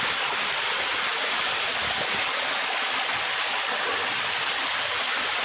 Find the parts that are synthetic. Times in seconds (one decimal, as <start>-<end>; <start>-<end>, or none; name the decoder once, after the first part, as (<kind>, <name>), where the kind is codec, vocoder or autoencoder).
none